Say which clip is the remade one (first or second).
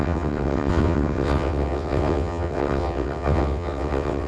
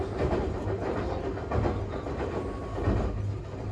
first